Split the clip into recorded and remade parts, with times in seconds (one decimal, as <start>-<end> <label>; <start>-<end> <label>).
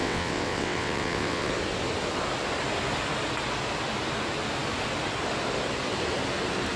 0.0-1.5 remade; 1.5-6.8 recorded